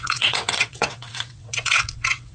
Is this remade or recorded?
remade